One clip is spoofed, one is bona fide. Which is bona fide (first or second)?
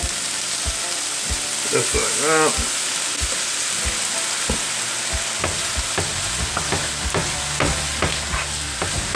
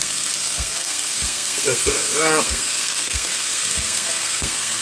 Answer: first